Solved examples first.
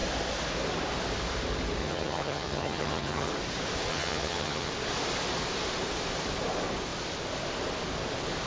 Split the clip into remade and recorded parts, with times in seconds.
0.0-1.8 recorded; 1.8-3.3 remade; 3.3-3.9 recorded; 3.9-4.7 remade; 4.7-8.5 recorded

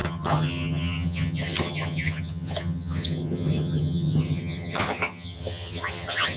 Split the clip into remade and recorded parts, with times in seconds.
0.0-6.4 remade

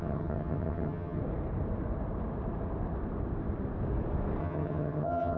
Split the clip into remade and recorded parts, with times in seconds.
0.0-1.2 remade; 1.2-4.4 recorded; 4.4-5.4 remade